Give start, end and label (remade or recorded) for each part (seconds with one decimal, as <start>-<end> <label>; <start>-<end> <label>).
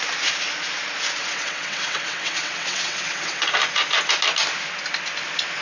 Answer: 0.0-1.2 recorded; 1.2-3.5 remade; 3.5-5.6 recorded